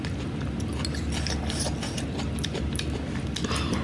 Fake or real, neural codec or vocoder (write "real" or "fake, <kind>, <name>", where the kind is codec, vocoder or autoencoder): real